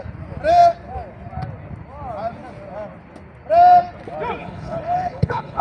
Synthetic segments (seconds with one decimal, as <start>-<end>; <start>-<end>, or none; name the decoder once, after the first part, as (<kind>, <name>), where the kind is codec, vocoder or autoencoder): 4.4-5.6 (codec, HILCodec)